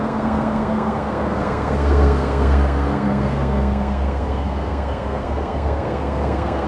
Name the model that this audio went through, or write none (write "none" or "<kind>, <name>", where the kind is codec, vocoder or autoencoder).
codec, SNAC